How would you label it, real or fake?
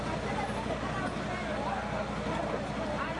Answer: real